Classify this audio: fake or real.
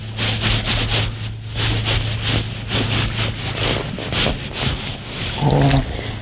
real